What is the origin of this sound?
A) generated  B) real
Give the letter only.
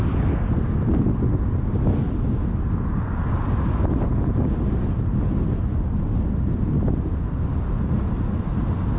B